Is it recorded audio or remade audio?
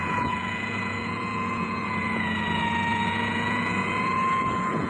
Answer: remade